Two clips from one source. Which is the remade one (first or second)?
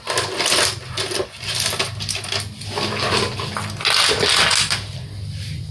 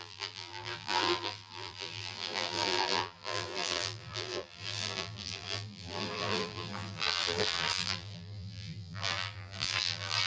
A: second